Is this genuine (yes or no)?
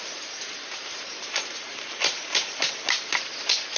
no